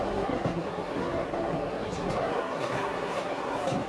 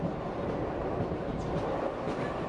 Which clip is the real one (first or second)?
second